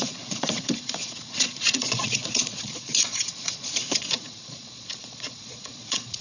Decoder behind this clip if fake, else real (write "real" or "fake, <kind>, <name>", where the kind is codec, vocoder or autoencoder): fake, vocoder, Vocos